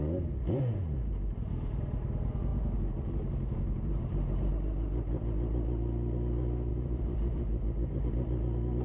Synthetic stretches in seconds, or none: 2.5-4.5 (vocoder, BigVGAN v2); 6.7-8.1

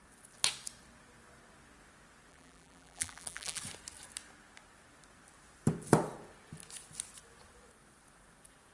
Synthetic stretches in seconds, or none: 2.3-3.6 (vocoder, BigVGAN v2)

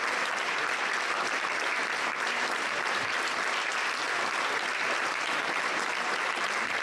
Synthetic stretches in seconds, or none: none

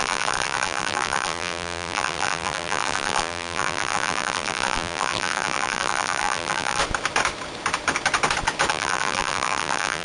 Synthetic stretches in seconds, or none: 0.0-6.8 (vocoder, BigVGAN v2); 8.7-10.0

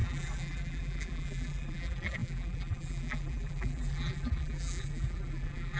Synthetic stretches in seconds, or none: 0.0-5.8 (vocoder, BigVGAN v2)

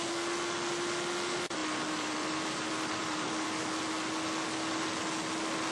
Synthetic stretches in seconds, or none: 1.6-3.5 (vocoder, BigVGAN v2)